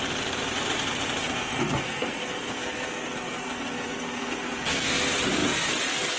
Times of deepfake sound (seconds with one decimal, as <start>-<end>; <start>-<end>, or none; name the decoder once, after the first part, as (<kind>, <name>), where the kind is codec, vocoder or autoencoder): 1.2-4.9 (codec, SNAC)